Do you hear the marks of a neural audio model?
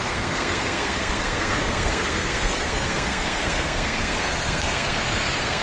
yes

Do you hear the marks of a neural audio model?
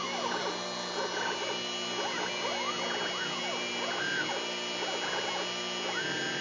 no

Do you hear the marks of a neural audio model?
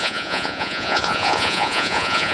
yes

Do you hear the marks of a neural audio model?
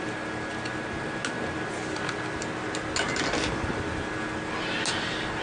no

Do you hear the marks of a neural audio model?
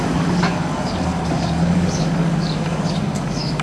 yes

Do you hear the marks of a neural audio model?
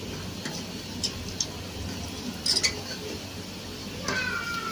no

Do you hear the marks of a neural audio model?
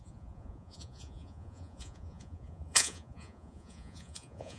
yes